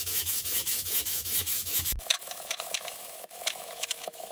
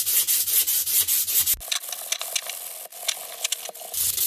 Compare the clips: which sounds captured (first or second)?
second